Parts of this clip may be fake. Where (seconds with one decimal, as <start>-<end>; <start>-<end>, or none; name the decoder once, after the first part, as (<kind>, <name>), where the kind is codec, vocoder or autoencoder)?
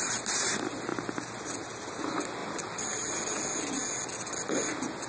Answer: 2.4-3.4 (vocoder, BigVGAN v2)